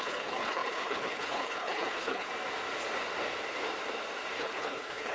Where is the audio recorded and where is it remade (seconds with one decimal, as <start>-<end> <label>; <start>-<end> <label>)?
0.0-2.3 remade; 2.3-4.4 recorded; 4.4-5.1 remade